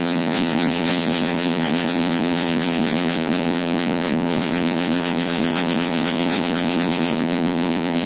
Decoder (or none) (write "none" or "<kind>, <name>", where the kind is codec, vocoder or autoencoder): vocoder, Vocos